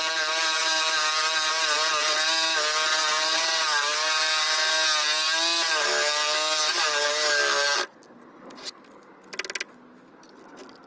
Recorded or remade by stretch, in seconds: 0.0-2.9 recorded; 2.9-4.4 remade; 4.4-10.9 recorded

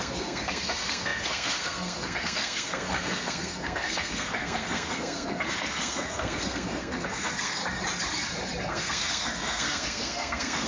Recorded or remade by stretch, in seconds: 0.0-7.6 remade; 7.6-8.7 recorded; 8.7-10.7 remade

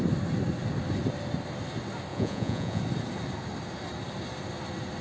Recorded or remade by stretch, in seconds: 0.0-2.1 recorded; 2.1-2.8 remade; 2.8-5.0 recorded

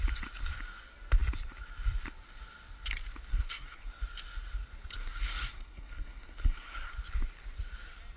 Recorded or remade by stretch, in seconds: 0.0-3.3 recorded; 3.3-4.0 remade; 4.0-5.0 recorded; 5.0-6.9 remade; 6.9-8.2 recorded

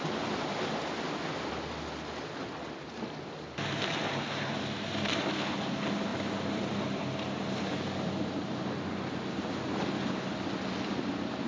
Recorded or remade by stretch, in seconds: 0.0-11.5 recorded

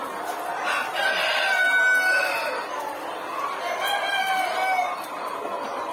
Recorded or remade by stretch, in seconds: 0.0-5.9 recorded

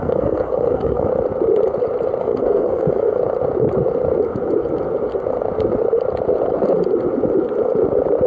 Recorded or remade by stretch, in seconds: 0.0-1.1 remade; 1.1-2.2 recorded; 2.2-3.2 remade; 3.2-8.3 recorded